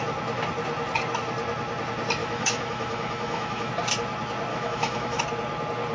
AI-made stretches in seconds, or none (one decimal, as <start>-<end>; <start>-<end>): 2.2-3.7; 4.5-5.2